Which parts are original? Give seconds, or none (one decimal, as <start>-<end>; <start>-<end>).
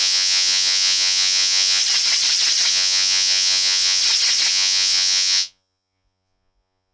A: 1.8-2.7; 4.0-4.5